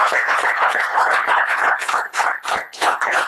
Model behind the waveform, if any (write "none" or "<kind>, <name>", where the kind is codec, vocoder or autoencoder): codec, HILCodec